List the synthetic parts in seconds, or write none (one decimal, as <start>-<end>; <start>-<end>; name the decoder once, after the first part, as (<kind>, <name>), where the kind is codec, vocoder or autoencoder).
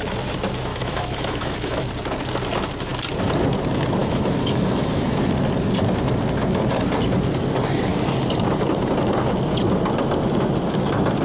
0.7-1.9 (autoencoder, DAC-VAE); 4.0-5.2